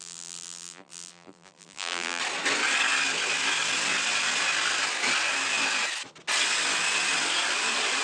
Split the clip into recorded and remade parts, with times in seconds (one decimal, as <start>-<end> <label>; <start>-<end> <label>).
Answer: 0.0-2.2 remade; 2.2-8.0 recorded